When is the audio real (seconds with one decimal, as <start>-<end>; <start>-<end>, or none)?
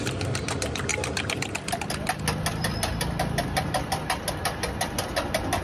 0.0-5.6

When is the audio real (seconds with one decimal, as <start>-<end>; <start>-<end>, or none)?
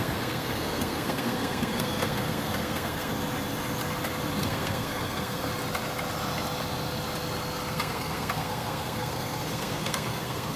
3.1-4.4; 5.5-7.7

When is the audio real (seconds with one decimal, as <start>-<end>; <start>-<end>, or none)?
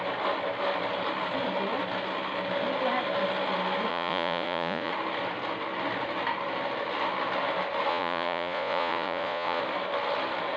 0.0-3.9; 4.9-7.9; 9.6-10.6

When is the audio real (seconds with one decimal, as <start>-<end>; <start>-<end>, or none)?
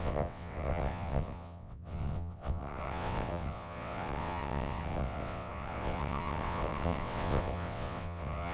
none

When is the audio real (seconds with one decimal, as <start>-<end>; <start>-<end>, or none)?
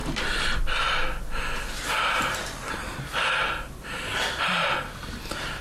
0.0-5.6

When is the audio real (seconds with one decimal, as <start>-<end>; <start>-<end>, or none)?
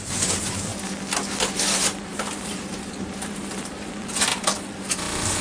0.7-1.4